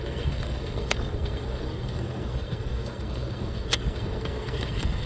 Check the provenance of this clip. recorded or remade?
remade